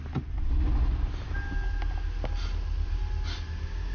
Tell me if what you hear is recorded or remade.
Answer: recorded